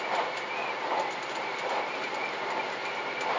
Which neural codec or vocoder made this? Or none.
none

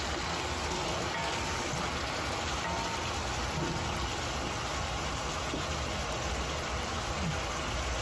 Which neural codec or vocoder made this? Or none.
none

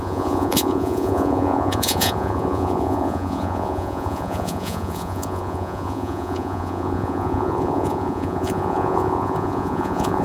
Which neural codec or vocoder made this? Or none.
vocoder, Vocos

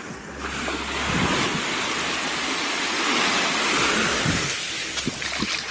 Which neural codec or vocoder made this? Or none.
none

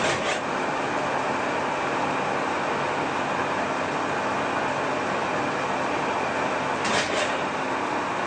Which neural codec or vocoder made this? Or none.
none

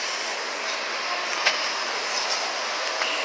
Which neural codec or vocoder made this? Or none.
none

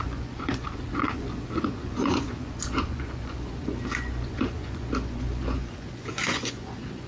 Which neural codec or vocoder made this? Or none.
vocoder, Vocos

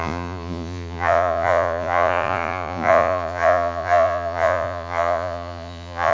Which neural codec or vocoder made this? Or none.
vocoder, Vocos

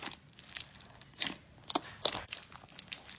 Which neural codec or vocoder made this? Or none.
none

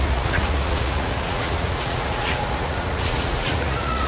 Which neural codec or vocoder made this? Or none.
vocoder, Vocos